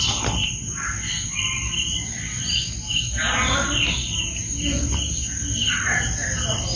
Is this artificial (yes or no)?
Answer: no